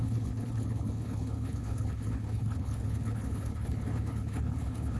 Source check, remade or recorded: remade